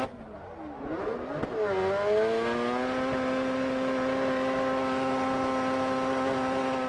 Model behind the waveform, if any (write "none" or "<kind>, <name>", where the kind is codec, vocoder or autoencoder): none